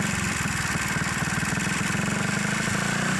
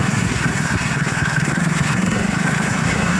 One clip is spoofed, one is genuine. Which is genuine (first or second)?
first